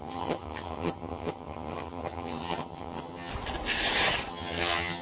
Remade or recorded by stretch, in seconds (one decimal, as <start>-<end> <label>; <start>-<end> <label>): 0.0-3.3 remade; 3.3-4.3 recorded; 4.3-5.0 remade